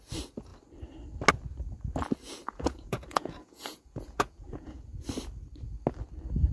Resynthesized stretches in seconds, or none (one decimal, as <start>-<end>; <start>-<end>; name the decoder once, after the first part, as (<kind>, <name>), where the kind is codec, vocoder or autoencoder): 2.4-5.0 (vocoder, Vocos)